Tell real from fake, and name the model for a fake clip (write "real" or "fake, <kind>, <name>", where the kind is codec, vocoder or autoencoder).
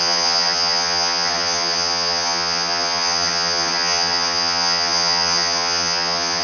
fake, vocoder, HiFi-GAN